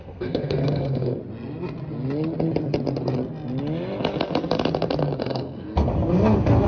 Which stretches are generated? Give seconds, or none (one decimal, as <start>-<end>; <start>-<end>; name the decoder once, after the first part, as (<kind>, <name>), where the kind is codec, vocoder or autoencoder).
0.0-1.2 (codec, SNAC); 5.2-5.9